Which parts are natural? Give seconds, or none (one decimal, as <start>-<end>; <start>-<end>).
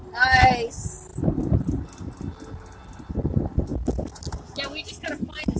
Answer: 0.0-5.6